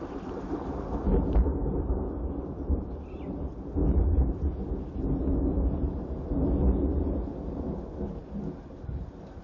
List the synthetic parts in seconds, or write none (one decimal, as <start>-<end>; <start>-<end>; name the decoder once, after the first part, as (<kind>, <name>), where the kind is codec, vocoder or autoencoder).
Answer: none